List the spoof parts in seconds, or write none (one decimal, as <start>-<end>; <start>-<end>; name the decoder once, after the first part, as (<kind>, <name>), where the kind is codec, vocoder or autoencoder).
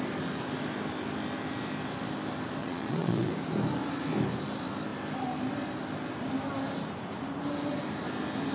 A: 2.6-3.3 (vocoder, Vocos)